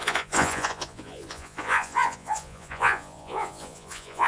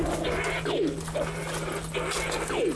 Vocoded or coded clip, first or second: first